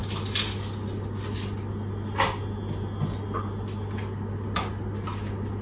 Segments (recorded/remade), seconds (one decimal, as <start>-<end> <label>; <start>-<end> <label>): 0.0-5.6 recorded